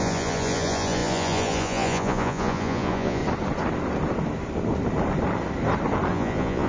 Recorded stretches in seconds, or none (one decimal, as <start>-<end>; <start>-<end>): 3.2-6.1